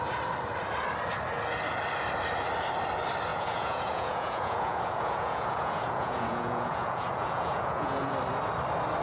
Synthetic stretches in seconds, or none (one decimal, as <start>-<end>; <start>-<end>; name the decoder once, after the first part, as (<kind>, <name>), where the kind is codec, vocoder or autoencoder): 3.3-8.1 (vocoder, Vocos)

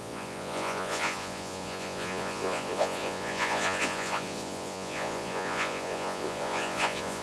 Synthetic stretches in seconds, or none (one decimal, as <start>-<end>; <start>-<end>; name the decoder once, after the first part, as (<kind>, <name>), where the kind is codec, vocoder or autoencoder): 0.0-7.2 (vocoder, Vocos)

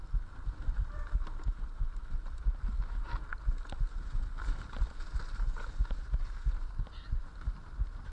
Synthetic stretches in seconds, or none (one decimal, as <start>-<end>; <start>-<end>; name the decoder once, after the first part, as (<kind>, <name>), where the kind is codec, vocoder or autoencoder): none